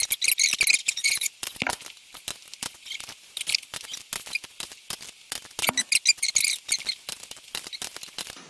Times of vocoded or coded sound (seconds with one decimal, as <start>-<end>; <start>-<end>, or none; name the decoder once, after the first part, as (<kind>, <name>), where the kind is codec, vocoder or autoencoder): 0.8-1.6 (vocoder, Vocos)